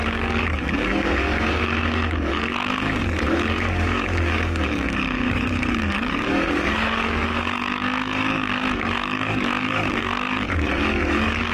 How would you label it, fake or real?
fake